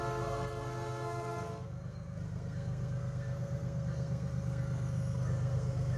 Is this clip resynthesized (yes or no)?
yes